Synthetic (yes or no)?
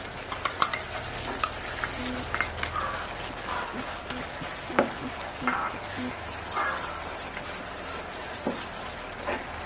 no